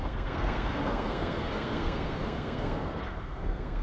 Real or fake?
fake